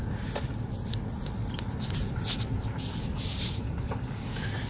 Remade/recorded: recorded